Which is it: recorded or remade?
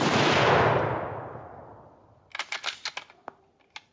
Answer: recorded